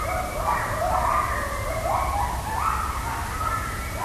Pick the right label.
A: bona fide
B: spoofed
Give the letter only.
A